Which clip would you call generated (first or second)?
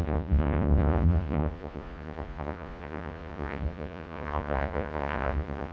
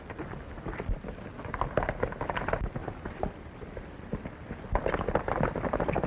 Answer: first